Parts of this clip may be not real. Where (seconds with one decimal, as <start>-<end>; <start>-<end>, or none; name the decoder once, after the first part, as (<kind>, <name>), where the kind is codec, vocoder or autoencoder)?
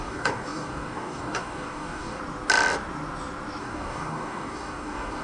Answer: 0.0-2.2 (codec, DAC); 3.6-5.2